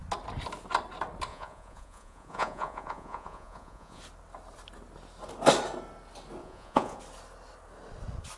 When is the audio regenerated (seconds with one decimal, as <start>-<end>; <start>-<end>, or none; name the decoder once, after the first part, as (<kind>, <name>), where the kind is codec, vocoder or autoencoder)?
1.3-4.0 (vocoder, Vocos); 6.4-7.0